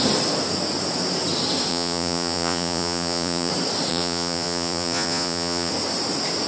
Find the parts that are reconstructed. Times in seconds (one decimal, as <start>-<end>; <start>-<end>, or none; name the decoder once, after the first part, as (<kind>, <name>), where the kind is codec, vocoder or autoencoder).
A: 1.7-3.5 (vocoder, Vocos); 3.9-5.7